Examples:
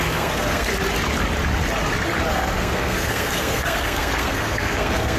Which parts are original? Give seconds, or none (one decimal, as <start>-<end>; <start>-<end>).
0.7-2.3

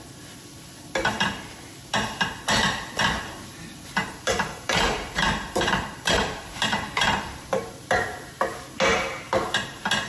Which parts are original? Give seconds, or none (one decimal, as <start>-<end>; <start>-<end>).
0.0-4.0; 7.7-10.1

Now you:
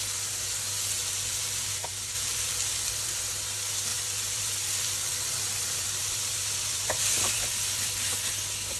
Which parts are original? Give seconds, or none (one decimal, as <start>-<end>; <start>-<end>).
0.0-1.0; 3.4-3.9; 8.1-8.8

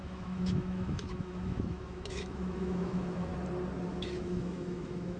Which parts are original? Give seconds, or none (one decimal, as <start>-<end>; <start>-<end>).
3.3-3.9

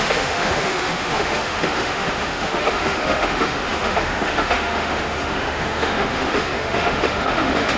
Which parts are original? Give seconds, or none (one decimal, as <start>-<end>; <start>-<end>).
none

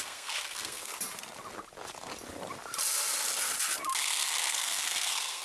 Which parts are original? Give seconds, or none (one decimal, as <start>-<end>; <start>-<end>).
0.9-4.0